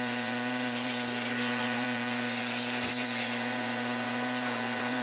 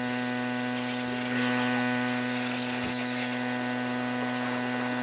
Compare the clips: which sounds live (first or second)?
second